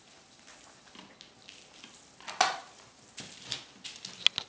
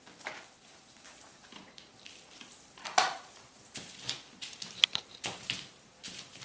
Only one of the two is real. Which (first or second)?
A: first